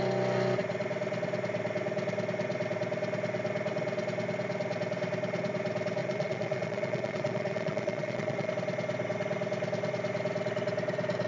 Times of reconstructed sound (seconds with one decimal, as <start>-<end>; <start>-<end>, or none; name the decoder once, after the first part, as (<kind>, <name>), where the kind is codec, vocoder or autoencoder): 6.0-8.5 (vocoder, Vocos)